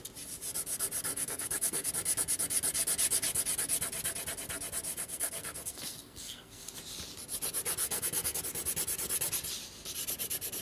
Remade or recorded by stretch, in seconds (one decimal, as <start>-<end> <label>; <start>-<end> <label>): 0.0-1.1 recorded; 1.1-1.9 remade; 1.9-4.9 recorded; 4.9-6.7 remade; 6.7-7.8 recorded; 7.8-8.4 remade; 8.4-10.6 recorded